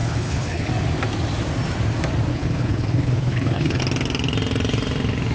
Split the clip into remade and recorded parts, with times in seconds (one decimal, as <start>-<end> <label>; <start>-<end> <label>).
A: 0.0-0.7 remade; 0.7-2.3 recorded; 2.3-3.8 remade; 3.8-5.3 recorded